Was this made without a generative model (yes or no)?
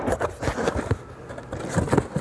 yes